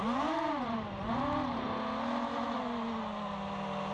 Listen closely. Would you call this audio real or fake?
real